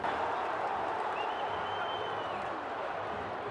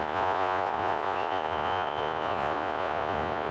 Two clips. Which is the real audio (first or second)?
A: first